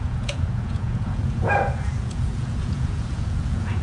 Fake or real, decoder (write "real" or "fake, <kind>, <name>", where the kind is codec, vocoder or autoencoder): fake, vocoder, Vocos